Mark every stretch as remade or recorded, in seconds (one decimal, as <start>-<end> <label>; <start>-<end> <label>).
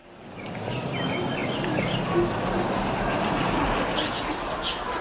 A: 0.0-5.0 recorded